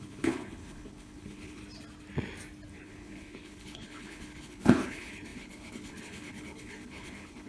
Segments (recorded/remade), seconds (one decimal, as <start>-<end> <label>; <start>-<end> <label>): 0.0-1.6 remade; 1.6-2.7 recorded; 2.7-7.5 remade